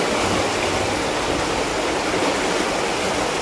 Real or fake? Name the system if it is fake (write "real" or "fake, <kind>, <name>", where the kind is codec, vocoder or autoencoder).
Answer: real